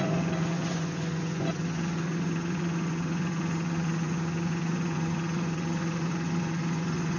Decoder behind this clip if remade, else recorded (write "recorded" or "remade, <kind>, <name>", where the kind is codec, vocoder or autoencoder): remade, vocoder, Vocos